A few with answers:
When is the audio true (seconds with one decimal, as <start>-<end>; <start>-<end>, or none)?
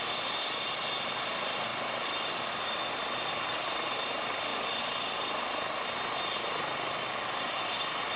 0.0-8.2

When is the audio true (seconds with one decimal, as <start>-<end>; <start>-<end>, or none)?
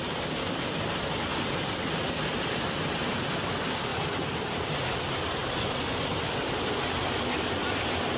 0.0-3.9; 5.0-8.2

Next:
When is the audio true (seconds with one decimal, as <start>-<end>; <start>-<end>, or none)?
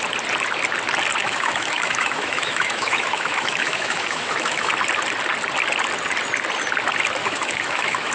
0.0-1.2; 4.7-7.2